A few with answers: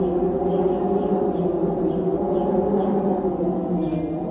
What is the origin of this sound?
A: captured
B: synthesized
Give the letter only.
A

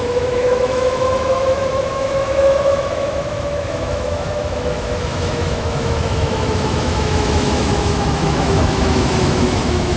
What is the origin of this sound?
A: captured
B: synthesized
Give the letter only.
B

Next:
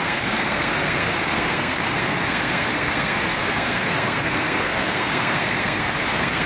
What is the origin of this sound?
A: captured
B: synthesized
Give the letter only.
B